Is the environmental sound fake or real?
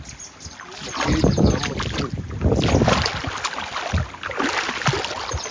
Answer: real